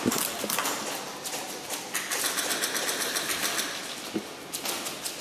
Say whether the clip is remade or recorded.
recorded